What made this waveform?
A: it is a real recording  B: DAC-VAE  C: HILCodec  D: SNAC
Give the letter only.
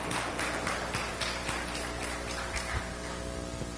A